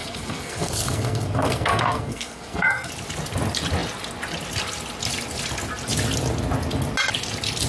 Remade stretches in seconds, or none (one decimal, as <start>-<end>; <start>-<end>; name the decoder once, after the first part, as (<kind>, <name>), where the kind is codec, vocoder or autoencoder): 0.0-2.9 (codec, SNAC)